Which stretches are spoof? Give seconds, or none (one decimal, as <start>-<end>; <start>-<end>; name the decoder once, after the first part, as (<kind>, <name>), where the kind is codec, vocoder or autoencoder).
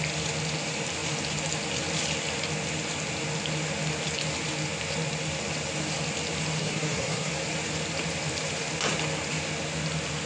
6.6-7.3 (codec, SNAC)